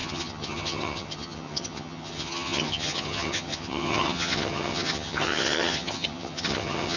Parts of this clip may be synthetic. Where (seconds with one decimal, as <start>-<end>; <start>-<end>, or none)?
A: 0.0-7.0